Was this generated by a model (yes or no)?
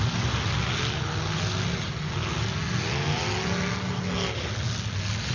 no